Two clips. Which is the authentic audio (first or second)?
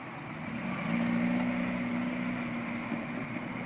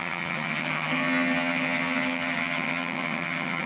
first